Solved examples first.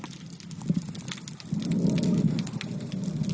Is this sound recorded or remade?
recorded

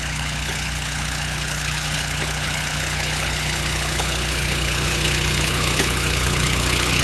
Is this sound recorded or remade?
remade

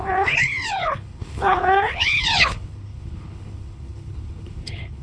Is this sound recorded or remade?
remade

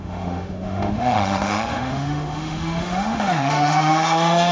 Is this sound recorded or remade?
remade